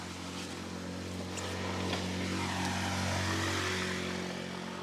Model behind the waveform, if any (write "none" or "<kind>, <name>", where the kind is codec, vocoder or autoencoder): none